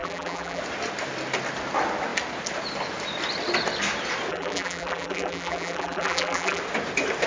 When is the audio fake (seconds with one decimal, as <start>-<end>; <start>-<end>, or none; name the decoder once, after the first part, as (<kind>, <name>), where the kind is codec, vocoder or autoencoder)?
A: 0.0-0.6 (vocoder, BigVGAN v2); 4.3-6.6